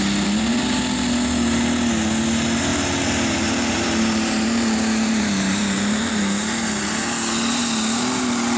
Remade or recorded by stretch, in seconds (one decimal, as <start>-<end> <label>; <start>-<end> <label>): 0.0-2.7 recorded; 2.7-6.1 remade; 6.1-8.6 recorded